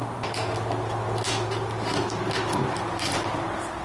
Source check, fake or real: real